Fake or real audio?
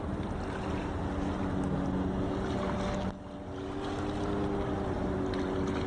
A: real